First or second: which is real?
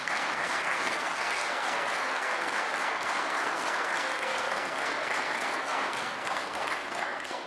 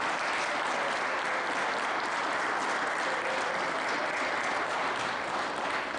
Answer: second